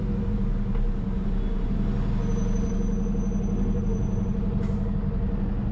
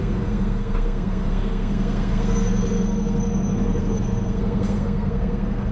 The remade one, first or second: second